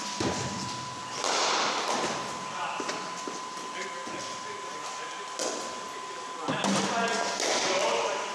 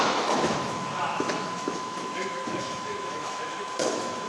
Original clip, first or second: first